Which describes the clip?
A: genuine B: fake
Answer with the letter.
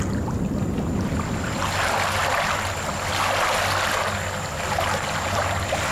A